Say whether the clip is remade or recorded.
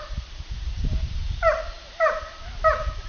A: remade